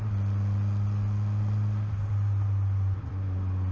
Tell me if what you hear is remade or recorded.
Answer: recorded